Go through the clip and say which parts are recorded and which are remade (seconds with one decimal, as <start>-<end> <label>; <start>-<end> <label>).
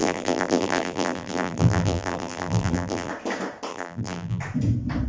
0.0-3.1 remade; 3.1-3.7 recorded; 3.7-4.4 remade; 4.4-5.1 recorded